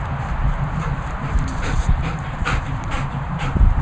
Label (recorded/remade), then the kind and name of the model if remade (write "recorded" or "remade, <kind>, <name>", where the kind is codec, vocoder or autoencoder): remade, vocoder, BigVGAN v2